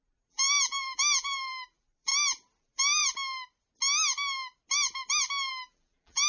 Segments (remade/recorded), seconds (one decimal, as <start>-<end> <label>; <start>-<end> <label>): 0.0-2.1 remade; 2.1-2.6 recorded; 2.6-3.0 remade; 3.0-5.5 recorded; 5.5-6.3 remade